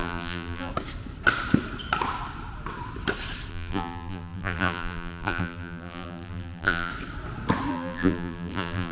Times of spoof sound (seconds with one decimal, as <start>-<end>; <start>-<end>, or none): 0.0-0.7; 3.5-6.9; 7.7-8.9